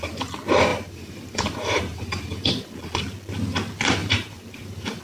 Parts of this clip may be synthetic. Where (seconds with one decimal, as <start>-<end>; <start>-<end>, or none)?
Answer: 0.7-2.7; 4.0-5.0